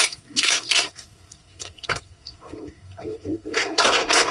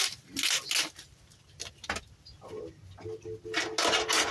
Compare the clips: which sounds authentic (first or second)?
second